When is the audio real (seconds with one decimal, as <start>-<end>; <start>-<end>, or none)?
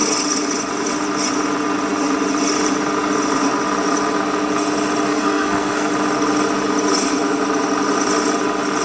0.0-5.1; 5.9-8.8